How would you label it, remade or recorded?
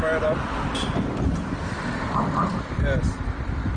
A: recorded